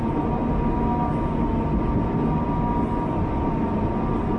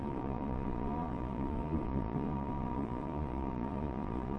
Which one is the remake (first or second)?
second